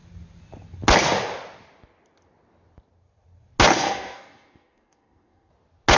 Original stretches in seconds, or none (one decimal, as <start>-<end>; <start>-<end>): 0.0-3.7; 5.5-6.0